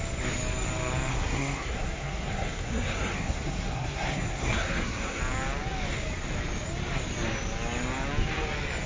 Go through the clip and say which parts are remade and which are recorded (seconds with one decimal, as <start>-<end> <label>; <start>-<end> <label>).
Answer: 0.0-1.1 recorded; 1.1-5.2 remade; 5.2-8.9 recorded